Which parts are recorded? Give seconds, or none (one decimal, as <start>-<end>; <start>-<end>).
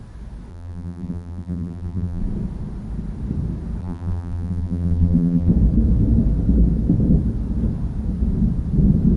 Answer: 0.0-0.5; 2.2-3.8; 5.5-9.2